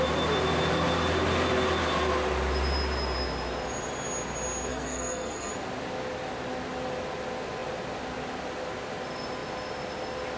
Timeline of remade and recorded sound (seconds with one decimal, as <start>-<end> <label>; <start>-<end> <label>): 0.0-4.7 recorded; 4.7-5.5 remade; 5.5-10.4 recorded